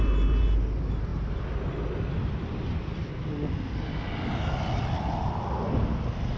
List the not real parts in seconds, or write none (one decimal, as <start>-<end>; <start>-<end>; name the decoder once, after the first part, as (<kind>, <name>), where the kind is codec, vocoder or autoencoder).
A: none